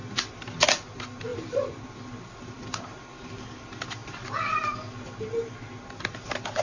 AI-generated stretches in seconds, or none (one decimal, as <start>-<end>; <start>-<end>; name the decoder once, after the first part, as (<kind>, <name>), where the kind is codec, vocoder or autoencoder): 1.3-2.6 (vocoder, BigVGAN v2)